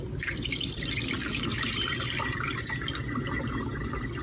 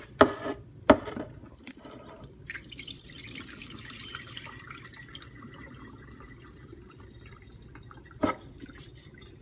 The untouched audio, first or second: first